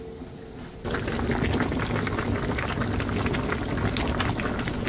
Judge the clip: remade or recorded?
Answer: recorded